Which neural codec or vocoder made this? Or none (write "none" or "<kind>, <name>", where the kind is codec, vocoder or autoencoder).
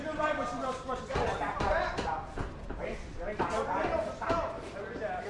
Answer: vocoder, BigVGAN v2